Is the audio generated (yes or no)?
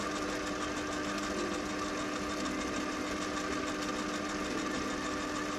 no